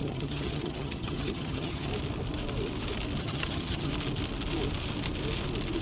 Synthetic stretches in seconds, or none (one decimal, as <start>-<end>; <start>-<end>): 0.0-1.9; 3.2-3.9